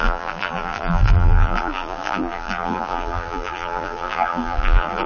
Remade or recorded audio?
remade